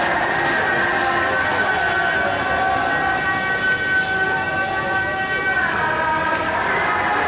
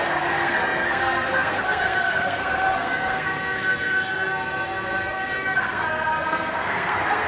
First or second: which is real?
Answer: first